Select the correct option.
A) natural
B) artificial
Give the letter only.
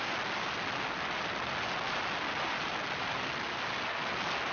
A